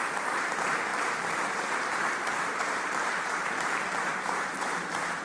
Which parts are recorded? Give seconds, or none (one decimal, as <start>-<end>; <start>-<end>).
none